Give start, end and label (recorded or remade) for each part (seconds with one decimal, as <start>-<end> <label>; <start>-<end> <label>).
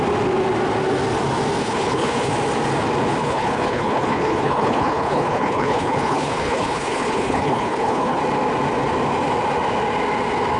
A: 0.0-1.6 recorded; 1.6-2.3 remade; 2.3-3.2 recorded; 3.2-8.2 remade; 8.2-10.6 recorded